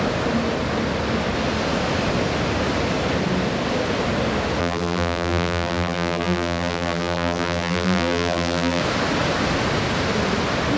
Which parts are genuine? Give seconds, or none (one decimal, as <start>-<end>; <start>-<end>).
0.0-4.6; 8.8-10.8